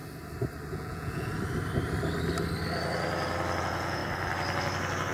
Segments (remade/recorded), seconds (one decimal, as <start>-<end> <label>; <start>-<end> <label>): 0.0-0.7 recorded; 0.7-1.3 remade; 1.3-3.6 recorded; 3.6-4.0 remade; 4.0-5.1 recorded